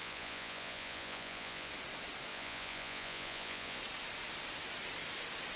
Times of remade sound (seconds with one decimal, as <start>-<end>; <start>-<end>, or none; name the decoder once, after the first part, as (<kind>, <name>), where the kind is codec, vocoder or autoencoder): 0.0-1.7 (vocoder, Vocos); 2.3-3.8